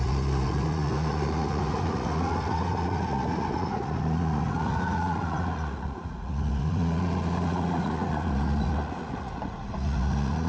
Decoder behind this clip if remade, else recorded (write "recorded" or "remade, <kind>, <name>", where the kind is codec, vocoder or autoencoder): remade, vocoder, Vocos